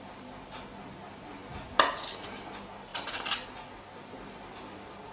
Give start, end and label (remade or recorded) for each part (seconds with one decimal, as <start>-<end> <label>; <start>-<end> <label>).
0.0-1.4 remade; 1.4-2.4 recorded; 2.4-2.9 remade; 2.9-4.6 recorded; 4.6-5.1 remade

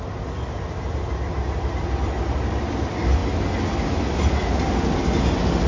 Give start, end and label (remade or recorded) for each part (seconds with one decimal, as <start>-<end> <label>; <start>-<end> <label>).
0.0-5.7 recorded

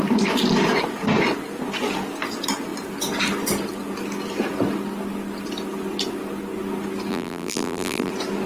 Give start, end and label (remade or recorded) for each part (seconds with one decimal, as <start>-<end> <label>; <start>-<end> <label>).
0.0-7.1 recorded; 7.1-8.1 remade; 8.1-8.5 recorded

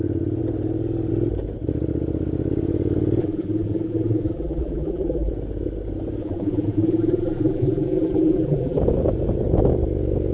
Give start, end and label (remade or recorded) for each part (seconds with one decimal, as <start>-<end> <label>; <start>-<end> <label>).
0.0-3.2 recorded; 3.2-5.3 remade; 5.3-6.2 recorded; 6.2-8.8 remade; 8.8-10.3 recorded

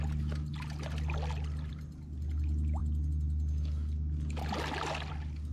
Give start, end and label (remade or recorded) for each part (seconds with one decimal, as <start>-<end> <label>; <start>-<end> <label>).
0.0-5.5 recorded

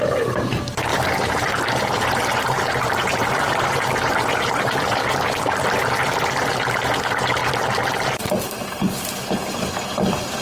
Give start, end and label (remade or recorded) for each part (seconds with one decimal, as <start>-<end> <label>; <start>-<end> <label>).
0.0-7.4 remade; 7.4-8.2 recorded; 8.2-10.4 remade

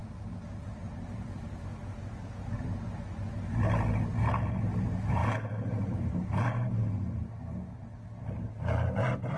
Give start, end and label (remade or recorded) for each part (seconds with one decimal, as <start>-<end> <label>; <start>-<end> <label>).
0.0-0.6 recorded; 0.6-1.7 remade; 1.7-4.5 recorded; 4.5-6.8 remade; 6.8-8.3 recorded; 8.3-9.4 remade

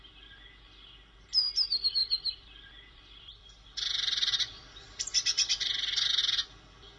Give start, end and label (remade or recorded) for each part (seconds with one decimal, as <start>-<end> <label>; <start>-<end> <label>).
0.0-2.0 recorded; 2.0-6.2 remade; 6.2-7.0 recorded